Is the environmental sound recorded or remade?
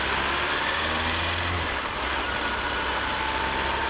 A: recorded